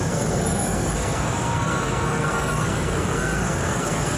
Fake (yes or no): yes